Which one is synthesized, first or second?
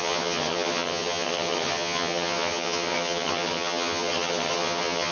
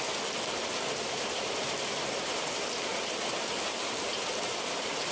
first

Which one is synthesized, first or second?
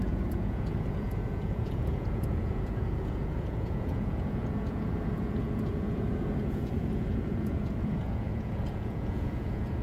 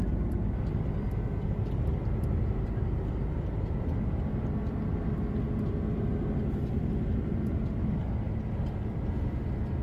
first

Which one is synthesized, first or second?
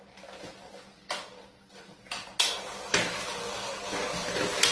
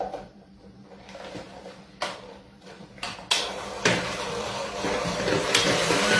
second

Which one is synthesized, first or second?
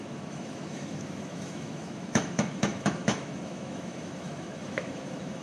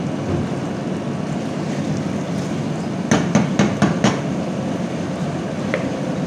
first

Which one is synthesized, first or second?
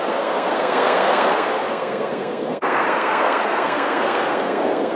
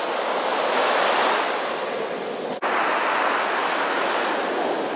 first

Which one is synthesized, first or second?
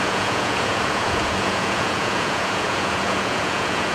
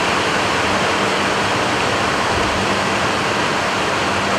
first